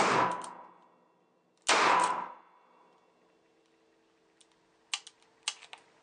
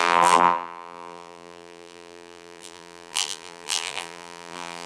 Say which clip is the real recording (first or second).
first